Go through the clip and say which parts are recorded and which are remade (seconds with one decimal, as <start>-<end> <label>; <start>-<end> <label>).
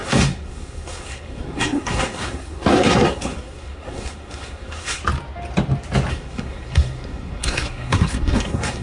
0.0-5.0 remade; 5.0-6.1 recorded; 6.1-8.8 remade